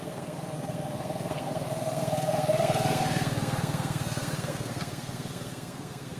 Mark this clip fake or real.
fake